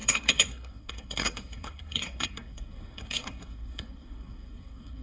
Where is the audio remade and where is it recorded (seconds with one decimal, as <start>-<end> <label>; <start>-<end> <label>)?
0.0-5.0 remade